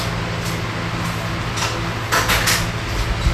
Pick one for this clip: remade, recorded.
recorded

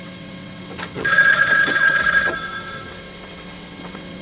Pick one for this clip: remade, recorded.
remade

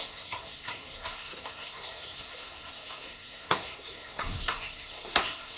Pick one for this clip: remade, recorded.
remade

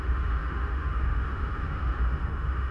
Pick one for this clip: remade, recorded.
remade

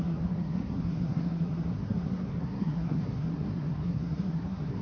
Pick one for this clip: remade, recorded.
remade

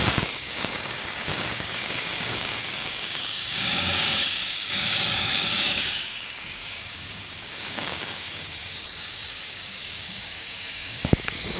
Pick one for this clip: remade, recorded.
remade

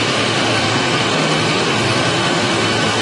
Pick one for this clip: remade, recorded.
remade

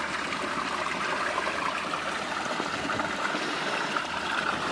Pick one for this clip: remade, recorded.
recorded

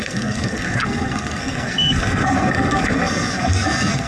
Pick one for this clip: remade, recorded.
remade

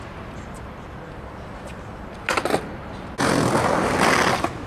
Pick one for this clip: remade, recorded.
recorded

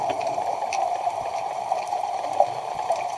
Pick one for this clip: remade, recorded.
remade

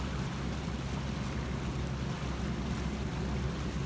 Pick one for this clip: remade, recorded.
recorded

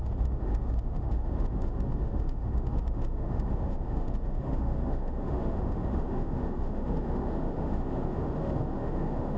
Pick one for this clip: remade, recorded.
remade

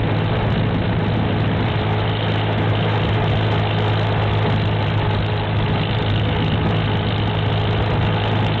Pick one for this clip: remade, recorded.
recorded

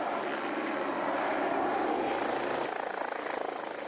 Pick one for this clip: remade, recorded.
recorded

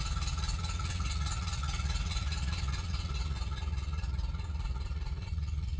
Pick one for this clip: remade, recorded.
remade